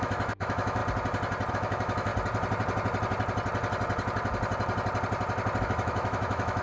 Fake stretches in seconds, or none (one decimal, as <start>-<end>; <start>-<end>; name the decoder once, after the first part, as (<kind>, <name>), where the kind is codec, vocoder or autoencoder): 0.0-0.8 (autoencoder, DAC-VAE); 1.5-2.1; 5.6-6.6